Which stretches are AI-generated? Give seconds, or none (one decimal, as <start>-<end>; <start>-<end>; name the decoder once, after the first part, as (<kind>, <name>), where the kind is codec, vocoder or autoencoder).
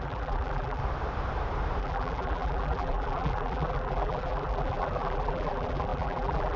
0.0-0.8 (vocoder, BigVGAN v2); 1.8-6.6